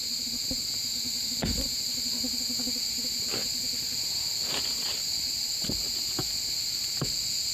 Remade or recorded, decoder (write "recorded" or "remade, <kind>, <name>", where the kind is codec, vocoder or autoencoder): recorded